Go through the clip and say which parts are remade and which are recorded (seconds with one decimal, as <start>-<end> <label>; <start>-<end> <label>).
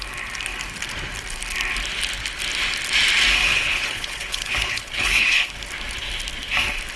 0.0-3.5 recorded; 3.5-5.5 remade; 5.5-7.0 recorded